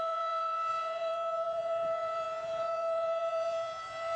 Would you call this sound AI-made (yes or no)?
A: yes